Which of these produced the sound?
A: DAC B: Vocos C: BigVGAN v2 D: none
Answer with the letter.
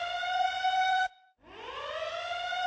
B